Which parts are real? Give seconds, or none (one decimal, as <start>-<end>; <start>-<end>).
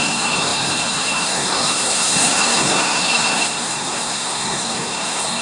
none